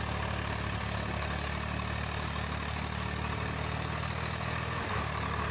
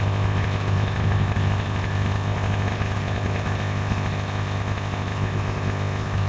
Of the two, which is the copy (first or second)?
second